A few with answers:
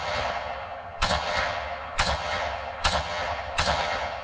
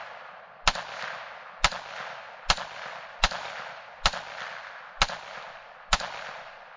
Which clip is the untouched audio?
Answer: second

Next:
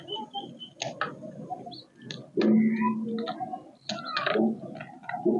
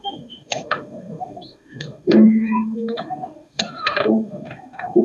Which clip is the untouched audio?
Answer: first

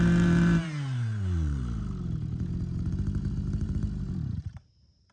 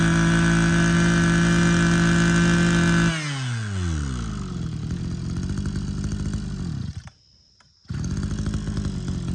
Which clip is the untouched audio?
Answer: second